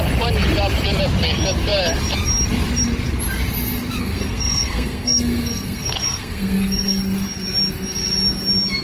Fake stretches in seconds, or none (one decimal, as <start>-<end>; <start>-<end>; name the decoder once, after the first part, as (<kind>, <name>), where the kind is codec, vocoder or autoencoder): 4.0-7.0 (codec, SNAC)